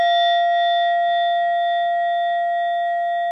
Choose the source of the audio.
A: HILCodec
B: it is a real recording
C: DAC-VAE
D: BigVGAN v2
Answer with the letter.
B